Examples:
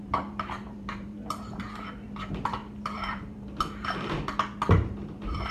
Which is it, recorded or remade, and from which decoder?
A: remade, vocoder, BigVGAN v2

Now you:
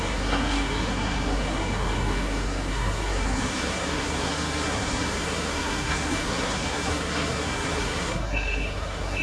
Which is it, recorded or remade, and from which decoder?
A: remade, codec, SNAC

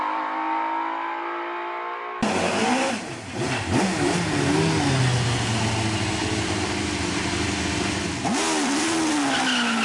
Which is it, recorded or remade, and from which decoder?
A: recorded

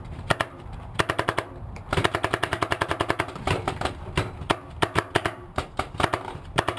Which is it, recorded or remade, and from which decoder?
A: remade, vocoder, BigVGAN v2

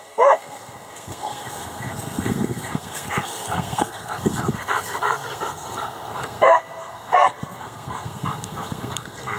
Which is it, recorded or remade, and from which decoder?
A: remade, codec, SNAC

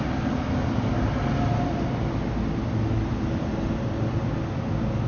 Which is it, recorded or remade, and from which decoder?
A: recorded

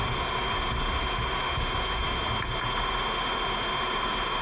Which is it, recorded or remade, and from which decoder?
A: recorded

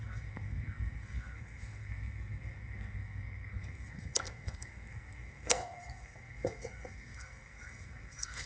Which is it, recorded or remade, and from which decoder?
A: remade, codec, SNAC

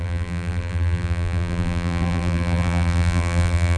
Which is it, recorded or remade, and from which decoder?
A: remade, vocoder, BigVGAN v2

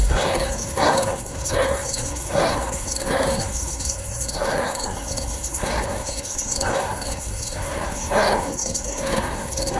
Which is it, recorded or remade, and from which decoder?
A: remade, codec, SNAC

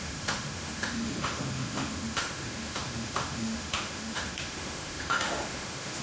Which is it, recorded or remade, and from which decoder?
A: remade, autoencoder, DAC-VAE